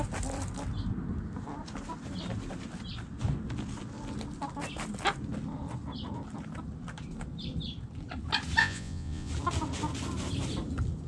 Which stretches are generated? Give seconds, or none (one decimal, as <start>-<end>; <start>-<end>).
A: 8.6-9.3